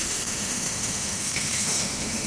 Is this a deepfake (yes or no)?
yes